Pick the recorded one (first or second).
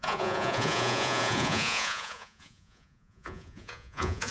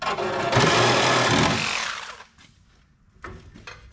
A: second